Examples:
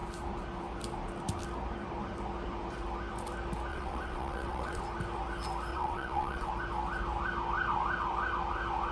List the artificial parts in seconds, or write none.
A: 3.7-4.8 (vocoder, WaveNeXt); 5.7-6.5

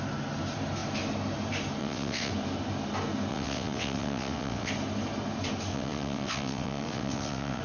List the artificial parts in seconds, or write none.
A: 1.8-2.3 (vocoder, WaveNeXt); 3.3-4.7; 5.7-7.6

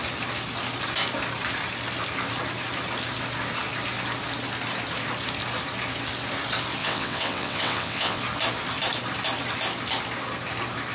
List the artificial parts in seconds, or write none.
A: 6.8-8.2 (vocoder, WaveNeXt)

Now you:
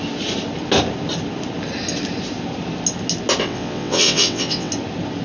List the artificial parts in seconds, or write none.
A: 3.4-4.7 (vocoder, WaveNeXt)

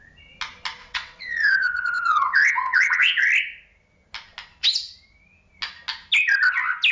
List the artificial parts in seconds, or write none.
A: 0.8-3.2 (vocoder, WaveNeXt)

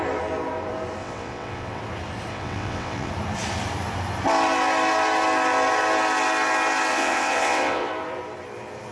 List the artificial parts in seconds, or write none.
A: 1.0-1.8 (vocoder, WaveNeXt); 2.3-3.1; 6.9-7.9